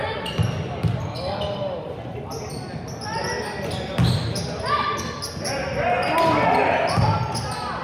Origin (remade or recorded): recorded